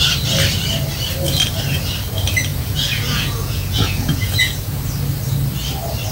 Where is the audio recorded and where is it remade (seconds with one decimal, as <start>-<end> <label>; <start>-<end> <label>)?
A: 0.0-2.5 recorded; 2.5-4.8 remade; 4.8-6.1 recorded